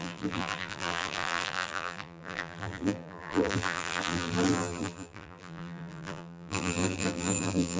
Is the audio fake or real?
fake